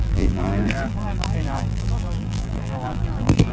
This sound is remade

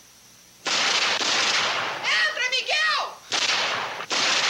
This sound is recorded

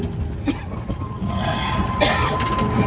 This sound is recorded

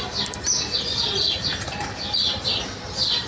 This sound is recorded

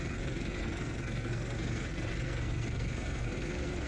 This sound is remade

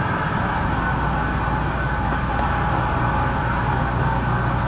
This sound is recorded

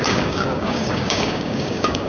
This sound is remade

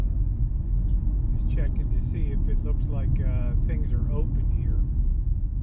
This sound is recorded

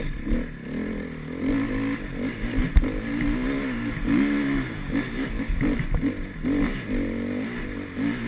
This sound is recorded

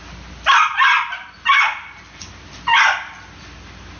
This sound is recorded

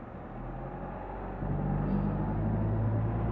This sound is recorded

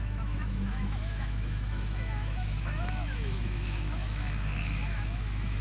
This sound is remade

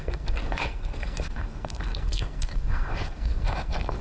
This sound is remade